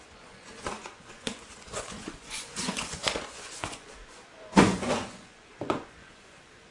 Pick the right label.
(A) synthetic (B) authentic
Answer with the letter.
A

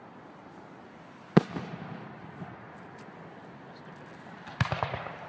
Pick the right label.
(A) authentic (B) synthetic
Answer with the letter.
A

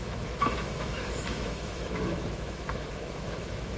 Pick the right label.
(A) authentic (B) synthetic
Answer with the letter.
B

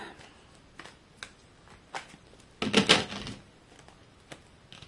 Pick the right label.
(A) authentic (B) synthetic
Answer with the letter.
A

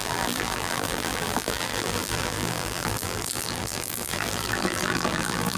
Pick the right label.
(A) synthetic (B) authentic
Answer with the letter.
A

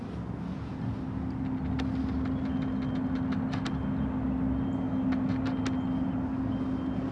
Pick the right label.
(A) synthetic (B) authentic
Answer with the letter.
B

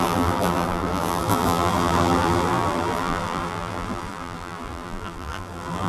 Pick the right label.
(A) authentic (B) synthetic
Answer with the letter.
B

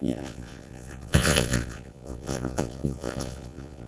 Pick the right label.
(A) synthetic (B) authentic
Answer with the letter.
A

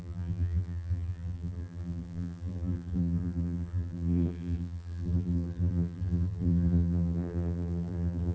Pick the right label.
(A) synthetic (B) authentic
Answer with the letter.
A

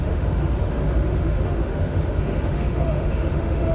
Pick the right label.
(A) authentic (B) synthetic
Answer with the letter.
B